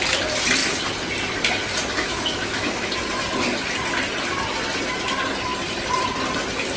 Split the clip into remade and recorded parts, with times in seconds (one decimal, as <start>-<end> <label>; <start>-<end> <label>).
0.0-1.9 recorded; 1.9-2.9 remade; 2.9-6.8 recorded